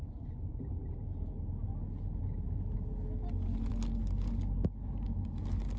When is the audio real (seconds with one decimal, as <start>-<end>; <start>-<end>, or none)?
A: 0.0-5.8